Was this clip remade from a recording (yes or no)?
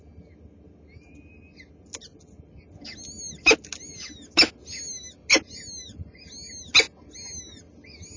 no